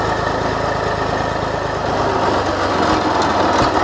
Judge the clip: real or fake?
real